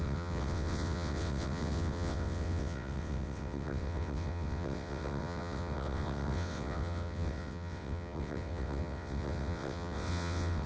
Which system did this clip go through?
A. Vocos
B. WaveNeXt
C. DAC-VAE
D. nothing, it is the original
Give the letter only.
B